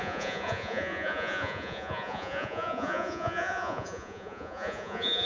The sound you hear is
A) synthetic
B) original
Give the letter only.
A